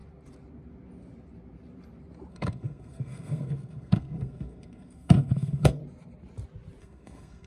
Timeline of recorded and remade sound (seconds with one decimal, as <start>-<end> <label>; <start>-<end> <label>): 0.0-2.3 recorded; 2.3-5.8 remade; 5.8-6.8 recorded; 6.8-7.5 remade